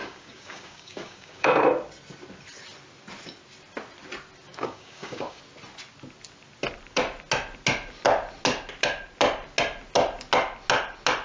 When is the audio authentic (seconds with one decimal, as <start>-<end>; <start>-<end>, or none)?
1.6-4.5; 5.4-11.2